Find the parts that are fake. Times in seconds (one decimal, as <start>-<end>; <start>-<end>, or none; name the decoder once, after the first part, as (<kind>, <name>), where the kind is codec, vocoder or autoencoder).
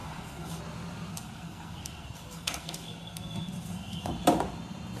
0.0-0.6 (codec, SNAC); 1.1-4.1